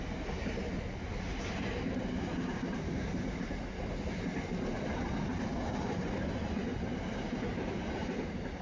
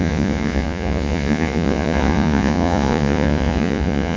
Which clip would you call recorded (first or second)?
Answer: first